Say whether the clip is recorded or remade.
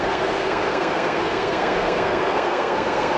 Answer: remade